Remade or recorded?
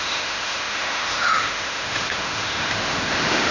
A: remade